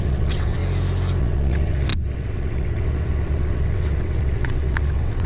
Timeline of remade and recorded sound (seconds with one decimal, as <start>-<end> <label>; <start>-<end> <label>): 0.0-0.6 remade; 0.6-1.2 recorded; 1.2-5.3 remade

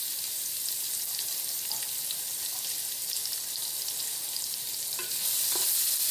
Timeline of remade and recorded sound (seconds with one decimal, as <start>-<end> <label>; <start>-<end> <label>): 0.0-6.1 recorded

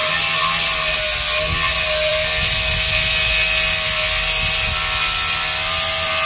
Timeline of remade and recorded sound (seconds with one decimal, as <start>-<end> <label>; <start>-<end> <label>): 0.0-6.3 recorded

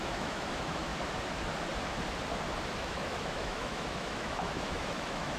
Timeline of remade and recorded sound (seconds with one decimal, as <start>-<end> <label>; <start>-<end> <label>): 0.0-0.9 remade; 0.9-2.8 recorded; 2.8-5.4 remade